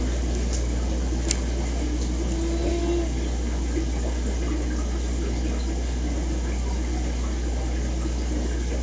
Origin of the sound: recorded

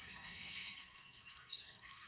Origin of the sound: remade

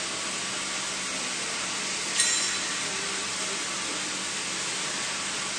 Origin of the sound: recorded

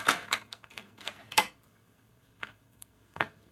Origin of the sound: remade